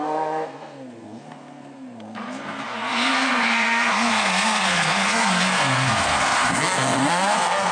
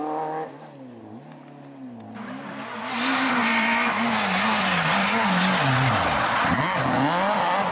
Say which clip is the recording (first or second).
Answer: second